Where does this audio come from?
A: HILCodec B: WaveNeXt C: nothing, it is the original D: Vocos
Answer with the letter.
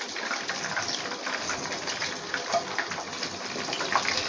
C